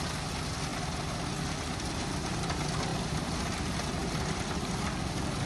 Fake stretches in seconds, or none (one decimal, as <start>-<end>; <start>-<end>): 0.7-1.6; 2.9-3.4; 4.0-4.5